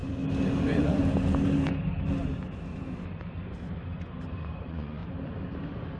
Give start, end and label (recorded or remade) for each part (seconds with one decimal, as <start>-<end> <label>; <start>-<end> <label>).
0.0-0.6 recorded; 0.6-1.0 remade; 1.0-4.6 recorded; 4.6-5.0 remade; 5.0-6.0 recorded